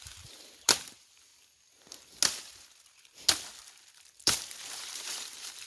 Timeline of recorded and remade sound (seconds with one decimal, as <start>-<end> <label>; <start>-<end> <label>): 0.0-1.3 remade; 1.3-4.7 recorded; 4.7-5.7 remade